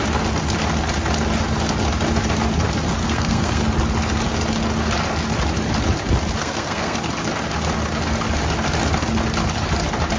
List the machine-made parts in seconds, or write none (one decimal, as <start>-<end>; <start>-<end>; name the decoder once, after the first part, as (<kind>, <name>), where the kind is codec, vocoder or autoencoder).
3.0-3.6 (codec, SNAC); 6.4-7.0

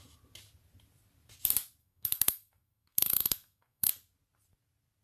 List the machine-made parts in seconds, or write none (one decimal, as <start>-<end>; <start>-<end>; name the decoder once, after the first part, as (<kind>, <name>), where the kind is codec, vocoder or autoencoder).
1.8-3.9 (codec, SNAC)